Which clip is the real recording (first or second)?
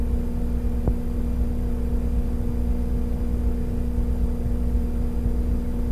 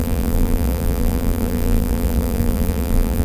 first